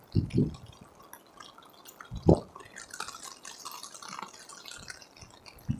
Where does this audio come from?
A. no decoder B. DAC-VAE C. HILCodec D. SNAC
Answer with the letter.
A